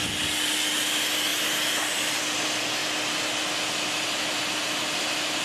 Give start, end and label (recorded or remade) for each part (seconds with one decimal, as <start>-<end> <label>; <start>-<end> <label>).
0.0-5.4 recorded